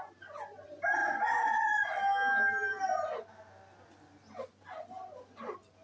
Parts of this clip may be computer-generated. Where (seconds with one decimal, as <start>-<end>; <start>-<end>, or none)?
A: none